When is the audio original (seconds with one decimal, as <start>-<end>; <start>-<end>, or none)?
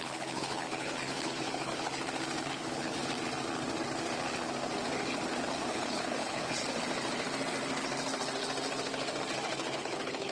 1.7-2.4; 3.0-5.7; 6.6-9.8